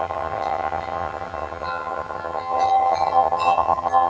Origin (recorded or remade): remade